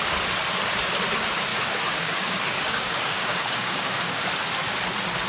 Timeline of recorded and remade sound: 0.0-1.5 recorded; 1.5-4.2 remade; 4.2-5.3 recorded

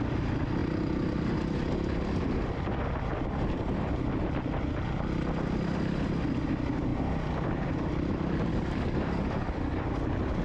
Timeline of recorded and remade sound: 0.0-8.5 recorded; 8.5-9.8 remade; 9.8-10.4 recorded

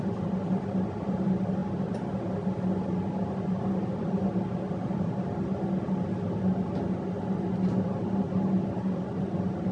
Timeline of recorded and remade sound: 0.0-9.7 recorded

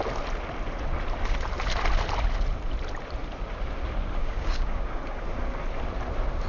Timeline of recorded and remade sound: 0.0-4.2 recorded; 4.2-5.0 remade; 5.0-6.5 recorded

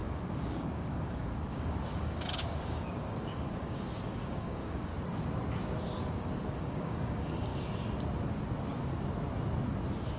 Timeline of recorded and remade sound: 0.0-4.9 remade; 4.9-6.6 recorded; 6.6-7.5 remade; 7.5-10.2 recorded

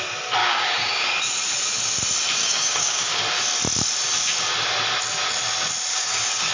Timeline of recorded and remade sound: 0.0-0.4 recorded; 0.4-1.1 remade; 1.1-2.4 recorded; 2.4-3.2 remade; 3.2-5.9 recorded; 5.9-6.5 remade

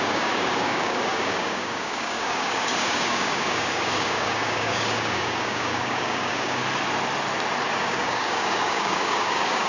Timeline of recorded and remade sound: 0.0-6.6 remade; 6.6-7.7 recorded; 7.7-9.7 remade